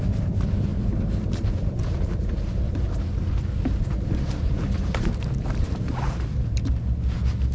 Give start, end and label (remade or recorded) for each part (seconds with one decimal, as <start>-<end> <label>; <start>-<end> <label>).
0.0-0.7 recorded; 0.7-3.0 remade; 3.0-3.9 recorded; 3.9-6.7 remade; 6.7-7.5 recorded